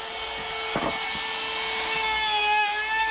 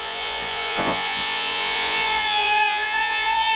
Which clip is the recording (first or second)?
first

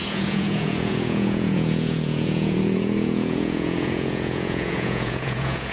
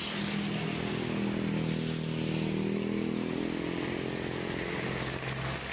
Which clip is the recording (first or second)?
second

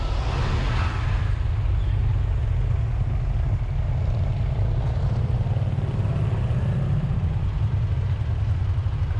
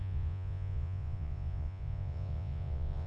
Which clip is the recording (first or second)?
first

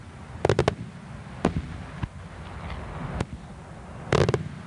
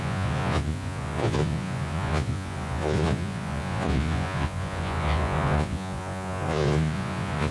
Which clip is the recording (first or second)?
first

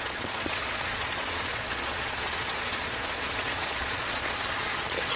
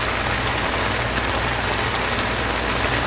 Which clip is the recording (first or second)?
second